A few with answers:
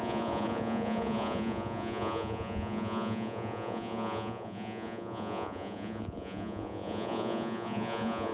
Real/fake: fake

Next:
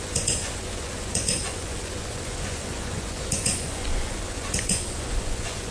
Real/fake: fake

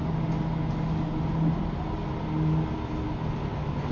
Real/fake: real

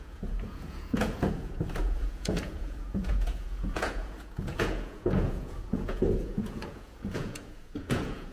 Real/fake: fake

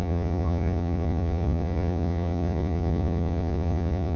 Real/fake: fake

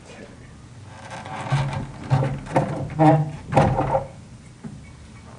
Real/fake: real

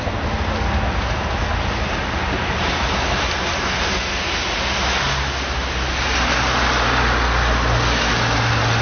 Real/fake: real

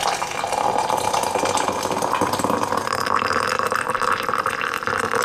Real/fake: real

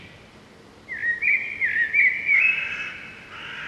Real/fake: real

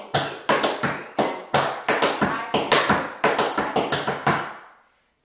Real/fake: real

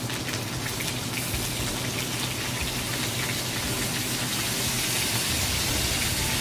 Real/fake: real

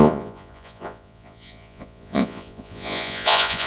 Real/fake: fake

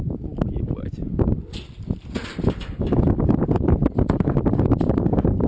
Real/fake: real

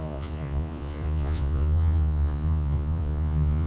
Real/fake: fake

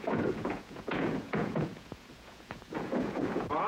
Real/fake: fake